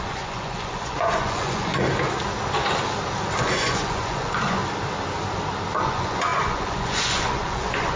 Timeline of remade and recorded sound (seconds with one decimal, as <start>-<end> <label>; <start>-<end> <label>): 0.0-1.7 remade; 1.7-3.4 recorded; 3.4-4.6 remade; 4.6-5.8 recorded; 5.8-8.0 remade